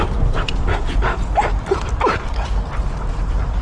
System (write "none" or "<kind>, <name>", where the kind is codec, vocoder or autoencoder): none